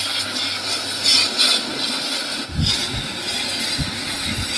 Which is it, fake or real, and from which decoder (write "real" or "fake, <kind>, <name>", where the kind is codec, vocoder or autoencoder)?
real